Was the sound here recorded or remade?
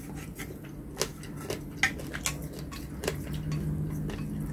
recorded